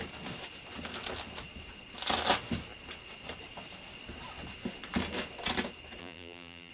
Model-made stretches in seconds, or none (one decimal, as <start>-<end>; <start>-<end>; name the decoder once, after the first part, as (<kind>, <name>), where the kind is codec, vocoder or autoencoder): 6.0-6.7 (vocoder, BigVGAN v2)